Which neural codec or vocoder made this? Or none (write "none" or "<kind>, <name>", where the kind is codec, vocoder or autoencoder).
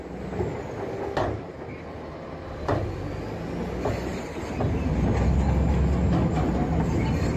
none